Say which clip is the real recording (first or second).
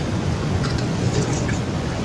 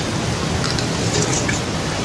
second